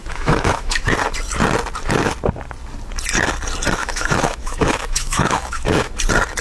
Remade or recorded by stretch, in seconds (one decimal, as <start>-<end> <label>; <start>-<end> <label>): 0.0-0.9 remade; 0.9-3.8 recorded; 3.8-5.9 remade; 5.9-6.4 recorded